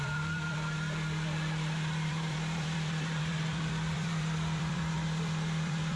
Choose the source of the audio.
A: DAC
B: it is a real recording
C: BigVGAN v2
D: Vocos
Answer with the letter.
C